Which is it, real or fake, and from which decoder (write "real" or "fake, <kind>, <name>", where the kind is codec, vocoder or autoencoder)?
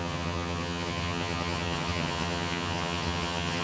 fake, vocoder, HiFi-GAN